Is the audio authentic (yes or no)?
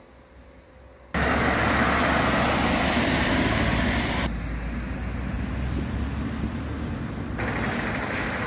yes